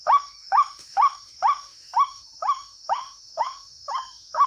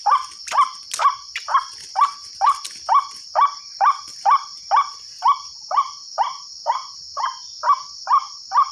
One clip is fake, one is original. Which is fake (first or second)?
first